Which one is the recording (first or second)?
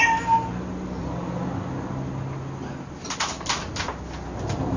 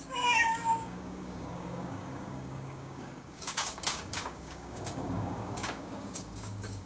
first